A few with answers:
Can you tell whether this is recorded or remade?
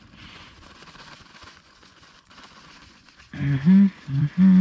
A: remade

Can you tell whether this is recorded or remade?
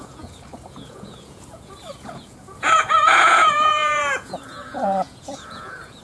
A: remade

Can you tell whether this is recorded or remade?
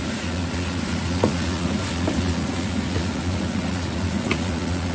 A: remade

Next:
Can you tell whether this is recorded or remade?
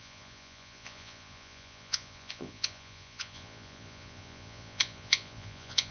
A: remade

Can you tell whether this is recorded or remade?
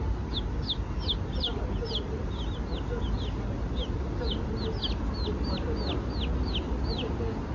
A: recorded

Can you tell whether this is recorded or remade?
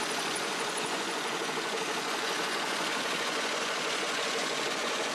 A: remade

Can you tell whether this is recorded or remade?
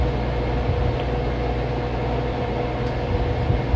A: recorded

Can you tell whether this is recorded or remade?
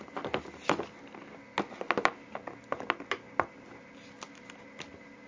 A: recorded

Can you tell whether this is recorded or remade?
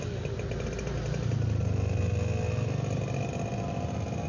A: recorded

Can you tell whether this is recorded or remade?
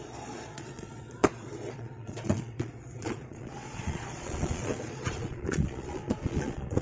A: remade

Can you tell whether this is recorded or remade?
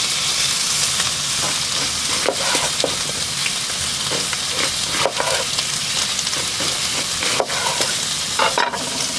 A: recorded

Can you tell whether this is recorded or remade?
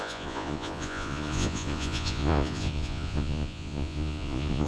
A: remade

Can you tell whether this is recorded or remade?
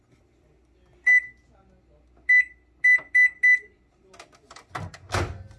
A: recorded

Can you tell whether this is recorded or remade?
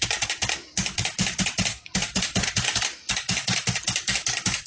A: recorded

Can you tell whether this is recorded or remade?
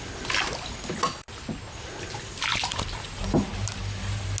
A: recorded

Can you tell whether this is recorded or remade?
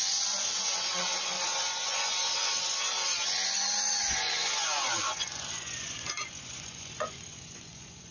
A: remade